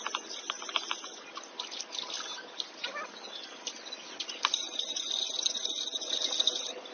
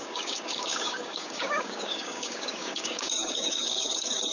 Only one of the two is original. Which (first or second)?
first